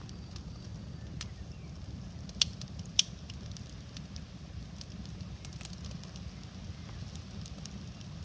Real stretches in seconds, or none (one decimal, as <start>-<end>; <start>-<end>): 0.0-8.2

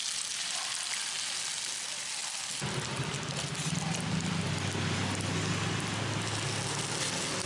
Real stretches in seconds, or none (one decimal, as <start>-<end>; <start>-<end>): 0.0-7.5

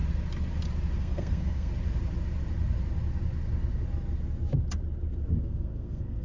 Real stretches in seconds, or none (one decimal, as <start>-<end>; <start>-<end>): 0.0-1.0; 1.7-5.4

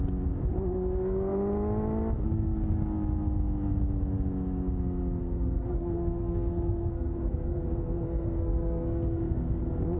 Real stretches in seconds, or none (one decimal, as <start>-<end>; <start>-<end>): 0.0-5.2; 9.6-10.0

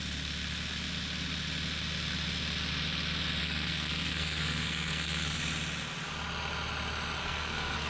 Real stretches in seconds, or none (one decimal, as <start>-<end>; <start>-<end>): 0.0-3.4; 5.4-7.2

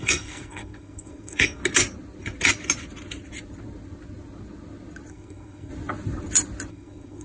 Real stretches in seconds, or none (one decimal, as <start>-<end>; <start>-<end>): 1.6-5.1; 5.7-6.7

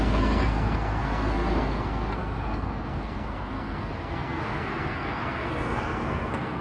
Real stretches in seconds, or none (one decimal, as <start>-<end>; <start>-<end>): none